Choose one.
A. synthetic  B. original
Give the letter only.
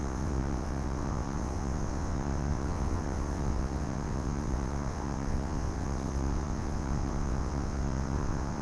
A